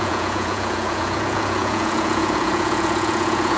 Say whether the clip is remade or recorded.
remade